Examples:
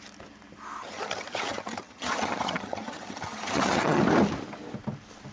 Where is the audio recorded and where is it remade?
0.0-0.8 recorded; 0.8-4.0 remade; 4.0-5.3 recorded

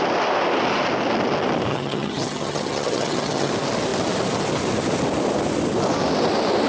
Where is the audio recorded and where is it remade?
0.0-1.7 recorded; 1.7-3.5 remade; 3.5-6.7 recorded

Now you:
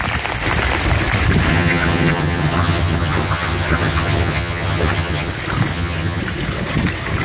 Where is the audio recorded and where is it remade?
0.0-1.5 recorded; 1.5-5.3 remade; 5.3-5.7 recorded; 5.7-6.2 remade; 6.2-7.2 recorded

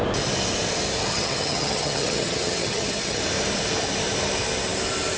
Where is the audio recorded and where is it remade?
0.0-1.1 recorded; 1.1-3.2 remade; 3.2-5.2 recorded